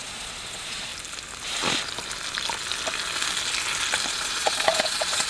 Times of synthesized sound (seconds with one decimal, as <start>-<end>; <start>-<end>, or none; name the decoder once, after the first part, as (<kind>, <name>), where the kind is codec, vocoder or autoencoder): 0.0-0.9 (vocoder, Vocos); 4.1-5.3